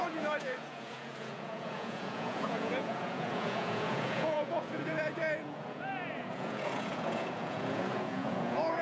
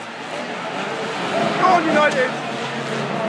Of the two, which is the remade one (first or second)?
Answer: first